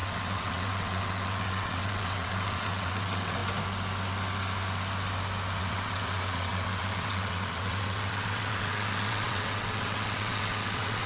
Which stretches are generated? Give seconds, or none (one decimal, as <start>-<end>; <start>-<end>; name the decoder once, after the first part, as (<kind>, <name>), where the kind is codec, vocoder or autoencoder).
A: 0.0-3.4 (vocoder, WaveNeXt); 5.6-11.1